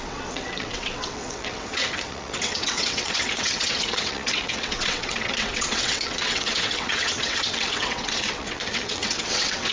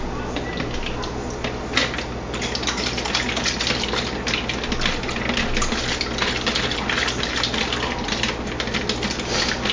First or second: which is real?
second